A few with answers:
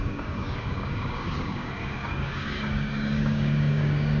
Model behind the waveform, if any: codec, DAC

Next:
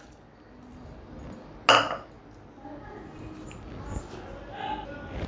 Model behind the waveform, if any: none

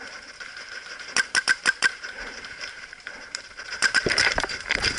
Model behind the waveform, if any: vocoder, BigVGAN v2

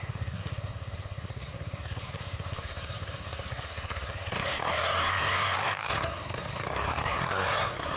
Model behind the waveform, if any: codec, SNAC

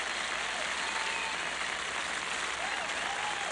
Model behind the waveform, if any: none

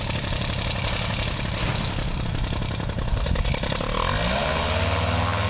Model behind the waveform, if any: none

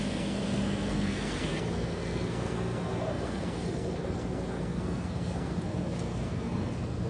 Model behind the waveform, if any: codec, SNAC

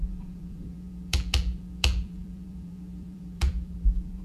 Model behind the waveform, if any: vocoder, BigVGAN v2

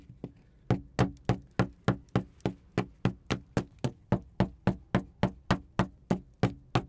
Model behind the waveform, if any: none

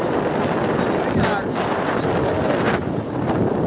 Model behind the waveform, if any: none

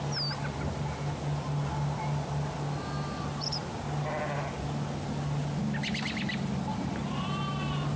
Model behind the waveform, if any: none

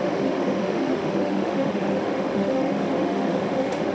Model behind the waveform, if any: autoencoder, DAC-VAE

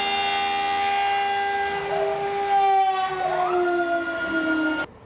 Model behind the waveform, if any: none